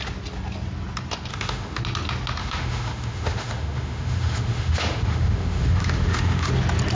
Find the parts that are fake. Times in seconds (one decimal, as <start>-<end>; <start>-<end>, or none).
1.3-1.8; 2.4-6.5